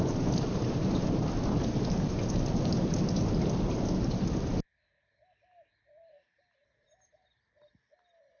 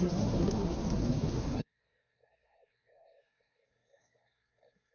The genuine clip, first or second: first